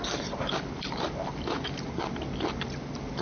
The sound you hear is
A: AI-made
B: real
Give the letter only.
B